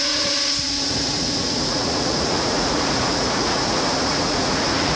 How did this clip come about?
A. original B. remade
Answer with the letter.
B